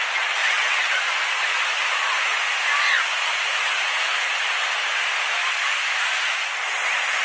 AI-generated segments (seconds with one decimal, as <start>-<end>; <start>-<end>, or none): 0.4-1.0; 3.6-4.2